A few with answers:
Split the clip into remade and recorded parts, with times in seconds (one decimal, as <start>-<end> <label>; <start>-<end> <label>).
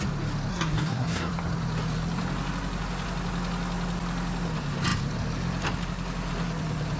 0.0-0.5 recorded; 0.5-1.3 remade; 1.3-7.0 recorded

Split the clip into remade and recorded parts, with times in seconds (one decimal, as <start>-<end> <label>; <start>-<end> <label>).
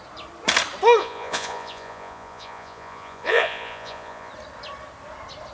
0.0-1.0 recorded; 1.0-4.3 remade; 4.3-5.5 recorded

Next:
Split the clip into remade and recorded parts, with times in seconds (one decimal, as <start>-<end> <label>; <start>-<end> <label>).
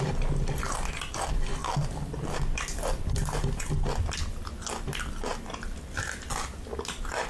0.0-7.3 recorded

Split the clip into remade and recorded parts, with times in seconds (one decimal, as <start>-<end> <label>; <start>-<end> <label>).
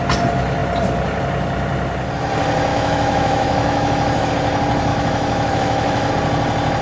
0.0-2.7 recorded; 2.7-4.3 remade; 4.3-4.9 recorded; 4.9-6.1 remade; 6.1-6.8 recorded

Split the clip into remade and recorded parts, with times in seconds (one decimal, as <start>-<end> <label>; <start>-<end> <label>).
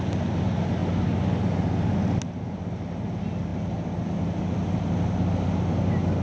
0.0-6.2 recorded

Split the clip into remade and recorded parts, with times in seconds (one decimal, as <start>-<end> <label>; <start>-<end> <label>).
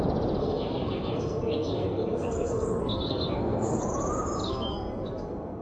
0.0-0.4 recorded; 0.4-3.8 remade; 3.8-4.4 recorded; 4.4-5.6 remade